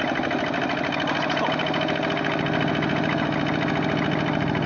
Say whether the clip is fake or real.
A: real